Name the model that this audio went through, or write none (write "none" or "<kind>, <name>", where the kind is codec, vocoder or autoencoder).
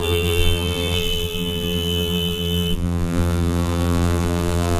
vocoder, BigVGAN v2